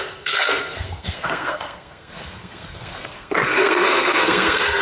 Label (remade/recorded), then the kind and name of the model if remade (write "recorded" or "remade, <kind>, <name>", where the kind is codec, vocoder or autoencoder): remade, codec, SNAC